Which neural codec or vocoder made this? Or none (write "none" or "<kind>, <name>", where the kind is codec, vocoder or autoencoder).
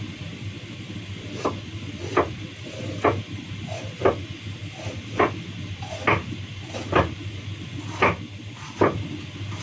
none